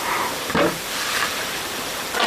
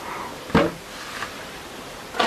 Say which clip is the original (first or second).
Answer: second